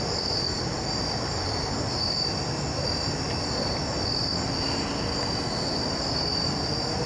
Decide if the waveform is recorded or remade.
recorded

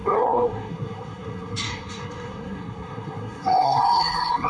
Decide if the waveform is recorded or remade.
remade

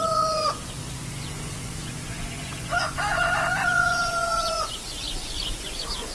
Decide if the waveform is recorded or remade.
remade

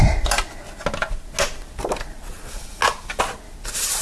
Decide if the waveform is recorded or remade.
recorded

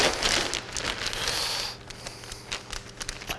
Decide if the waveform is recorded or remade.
recorded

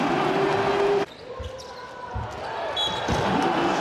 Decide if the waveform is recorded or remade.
recorded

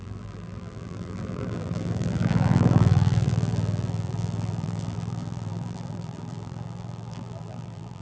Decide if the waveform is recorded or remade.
remade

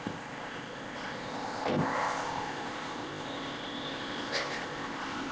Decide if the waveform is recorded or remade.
remade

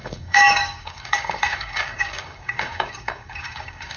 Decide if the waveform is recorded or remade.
remade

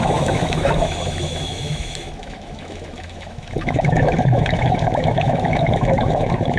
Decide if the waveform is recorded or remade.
remade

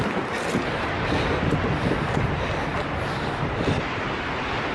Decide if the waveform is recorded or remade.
recorded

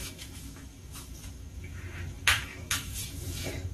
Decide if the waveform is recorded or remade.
remade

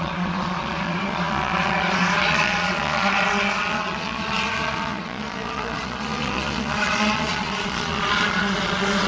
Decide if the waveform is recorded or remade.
remade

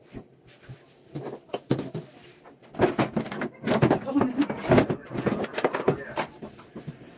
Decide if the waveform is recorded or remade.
remade